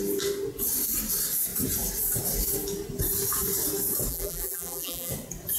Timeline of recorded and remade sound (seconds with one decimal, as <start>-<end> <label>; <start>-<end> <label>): 0.0-4.1 recorded; 4.1-5.1 remade; 5.1-5.6 recorded